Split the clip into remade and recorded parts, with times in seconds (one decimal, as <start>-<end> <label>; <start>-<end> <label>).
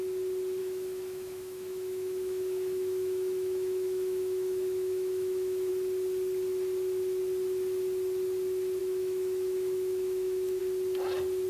0.0-0.6 recorded; 0.6-5.7 remade; 5.7-8.8 recorded; 8.8-10.6 remade; 10.6-11.5 recorded